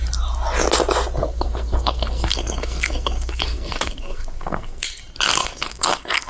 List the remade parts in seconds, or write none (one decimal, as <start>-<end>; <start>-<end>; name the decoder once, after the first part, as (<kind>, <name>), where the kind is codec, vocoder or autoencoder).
1.2-5.0 (codec, SNAC); 5.4-6.3